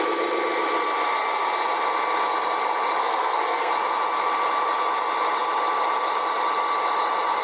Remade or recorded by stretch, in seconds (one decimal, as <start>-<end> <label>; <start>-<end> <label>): 0.0-3.0 recorded; 3.0-3.7 remade; 3.7-7.4 recorded